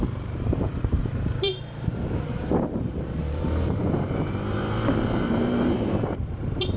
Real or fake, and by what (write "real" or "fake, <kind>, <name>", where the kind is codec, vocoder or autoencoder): fake, vocoder, BigVGAN v2